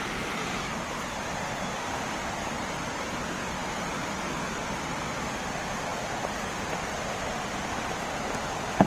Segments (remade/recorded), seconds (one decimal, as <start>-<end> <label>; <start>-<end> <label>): 0.0-1.8 recorded; 1.8-2.3 remade; 2.3-8.9 recorded